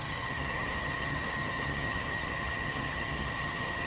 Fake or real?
fake